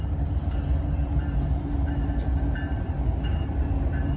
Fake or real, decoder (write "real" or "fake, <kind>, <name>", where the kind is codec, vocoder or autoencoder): fake, vocoder, BigVGAN v2